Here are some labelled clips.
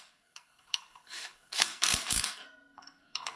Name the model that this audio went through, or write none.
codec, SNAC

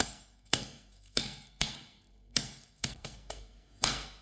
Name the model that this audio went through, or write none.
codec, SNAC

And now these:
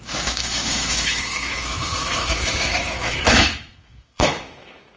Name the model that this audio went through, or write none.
autoencoder, DAC-VAE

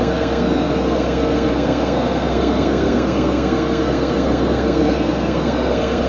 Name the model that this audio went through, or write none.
codec, SNAC